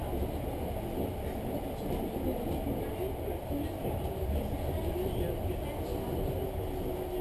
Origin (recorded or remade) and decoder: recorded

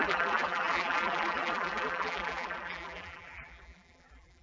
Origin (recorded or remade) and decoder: remade, vocoder, BigVGAN v2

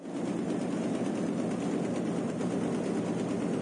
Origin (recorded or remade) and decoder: recorded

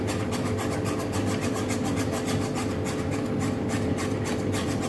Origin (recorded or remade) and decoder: recorded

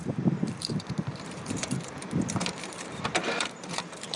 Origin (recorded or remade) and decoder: remade, vocoder, BigVGAN v2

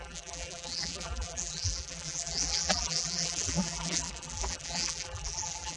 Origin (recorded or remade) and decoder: remade, vocoder, BigVGAN v2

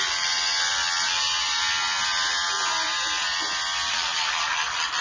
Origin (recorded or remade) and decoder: remade, vocoder, BigVGAN v2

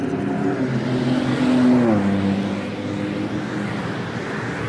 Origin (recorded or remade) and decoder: recorded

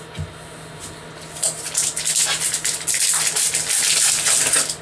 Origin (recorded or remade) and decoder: recorded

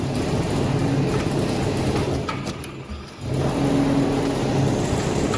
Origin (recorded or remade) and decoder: recorded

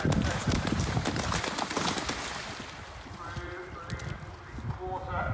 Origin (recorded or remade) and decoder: recorded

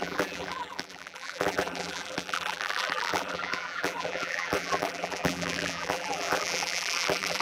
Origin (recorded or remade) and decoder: remade, vocoder, BigVGAN v2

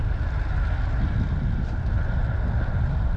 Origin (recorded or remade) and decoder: recorded